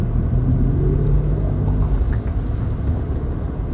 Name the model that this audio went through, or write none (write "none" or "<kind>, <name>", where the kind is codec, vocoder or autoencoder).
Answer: none